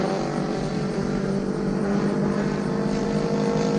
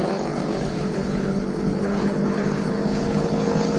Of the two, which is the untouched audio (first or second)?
first